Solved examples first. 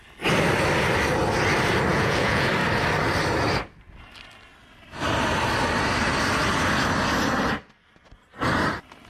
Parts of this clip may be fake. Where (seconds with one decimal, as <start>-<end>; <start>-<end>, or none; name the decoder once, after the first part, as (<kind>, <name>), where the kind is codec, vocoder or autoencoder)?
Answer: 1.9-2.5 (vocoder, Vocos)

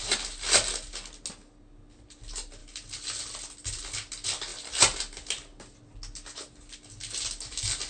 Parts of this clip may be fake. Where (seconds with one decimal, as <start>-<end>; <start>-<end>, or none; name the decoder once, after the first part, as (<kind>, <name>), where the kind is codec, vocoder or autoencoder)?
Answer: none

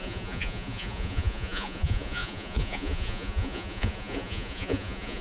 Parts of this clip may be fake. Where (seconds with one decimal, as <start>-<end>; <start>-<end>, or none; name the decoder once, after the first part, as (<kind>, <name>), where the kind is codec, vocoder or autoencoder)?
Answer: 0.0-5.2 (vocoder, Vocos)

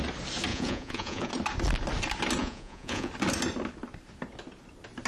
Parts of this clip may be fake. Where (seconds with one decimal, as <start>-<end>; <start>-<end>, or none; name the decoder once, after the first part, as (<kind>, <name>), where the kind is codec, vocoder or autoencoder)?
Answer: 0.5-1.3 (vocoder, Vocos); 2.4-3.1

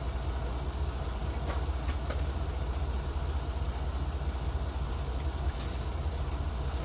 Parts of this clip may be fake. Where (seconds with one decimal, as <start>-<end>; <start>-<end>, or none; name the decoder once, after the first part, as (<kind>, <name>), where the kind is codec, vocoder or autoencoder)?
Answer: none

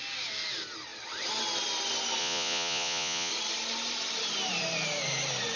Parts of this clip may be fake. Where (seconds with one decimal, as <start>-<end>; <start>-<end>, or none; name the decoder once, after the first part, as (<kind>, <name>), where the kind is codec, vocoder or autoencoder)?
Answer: 2.2-3.3 (vocoder, Vocos)